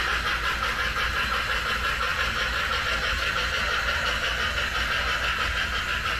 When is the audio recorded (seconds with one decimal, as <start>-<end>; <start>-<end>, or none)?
0.0-6.2